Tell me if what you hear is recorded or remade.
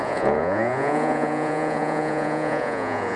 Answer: remade